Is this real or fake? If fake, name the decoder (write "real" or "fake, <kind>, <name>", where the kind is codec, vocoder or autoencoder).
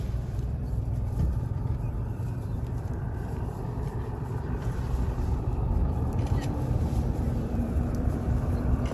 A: fake, vocoder, BigVGAN v2